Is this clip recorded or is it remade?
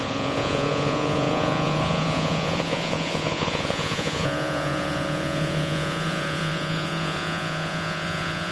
remade